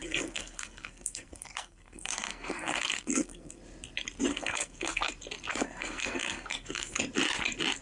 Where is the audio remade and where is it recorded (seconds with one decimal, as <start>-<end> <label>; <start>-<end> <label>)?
0.0-3.6 remade; 3.6-4.3 recorded; 4.3-5.1 remade; 5.1-5.5 recorded; 5.5-7.0 remade; 7.0-7.8 recorded